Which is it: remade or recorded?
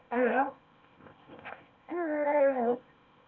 remade